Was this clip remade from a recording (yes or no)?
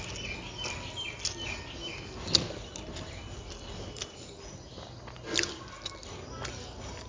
no